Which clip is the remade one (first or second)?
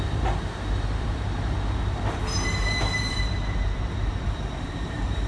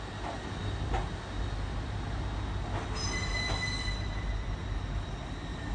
first